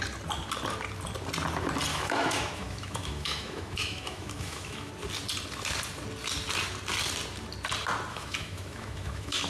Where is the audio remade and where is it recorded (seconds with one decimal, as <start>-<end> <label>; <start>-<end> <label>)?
0.0-1.9 recorded; 1.9-4.9 remade; 4.9-8.1 recorded; 8.1-9.5 remade